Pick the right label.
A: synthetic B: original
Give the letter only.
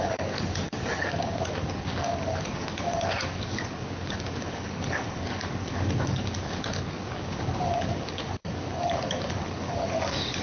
A